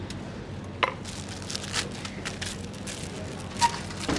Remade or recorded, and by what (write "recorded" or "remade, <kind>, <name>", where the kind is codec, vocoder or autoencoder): recorded